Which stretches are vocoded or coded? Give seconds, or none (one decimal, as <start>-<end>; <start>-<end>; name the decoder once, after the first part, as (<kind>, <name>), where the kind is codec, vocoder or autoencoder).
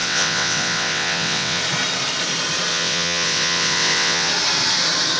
0.0-1.6 (vocoder, WaveNeXt); 2.7-4.3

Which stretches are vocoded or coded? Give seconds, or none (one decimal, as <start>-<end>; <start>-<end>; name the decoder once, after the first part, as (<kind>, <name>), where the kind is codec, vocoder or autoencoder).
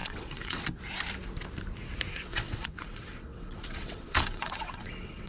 0.0-0.6 (vocoder, WaveNeXt); 2.1-5.3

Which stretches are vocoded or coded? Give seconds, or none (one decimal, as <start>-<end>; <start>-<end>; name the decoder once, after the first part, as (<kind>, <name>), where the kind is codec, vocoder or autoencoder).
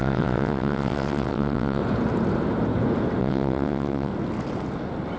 0.0-1.8 (vocoder, WaveNeXt); 3.2-4.1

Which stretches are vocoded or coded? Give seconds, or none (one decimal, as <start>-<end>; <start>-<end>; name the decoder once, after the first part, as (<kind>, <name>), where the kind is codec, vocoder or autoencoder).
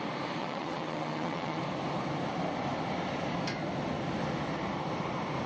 0.4-1.6 (vocoder, WaveNeXt)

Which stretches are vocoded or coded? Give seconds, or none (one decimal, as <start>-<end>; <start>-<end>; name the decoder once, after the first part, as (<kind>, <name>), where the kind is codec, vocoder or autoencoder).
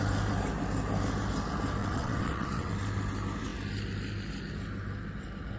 1.8-2.7 (vocoder, WaveNeXt)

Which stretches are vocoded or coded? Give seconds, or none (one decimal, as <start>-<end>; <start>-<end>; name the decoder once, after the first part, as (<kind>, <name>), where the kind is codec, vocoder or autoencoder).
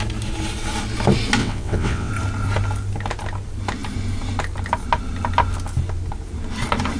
1.4-2.1 (vocoder, WaveNeXt)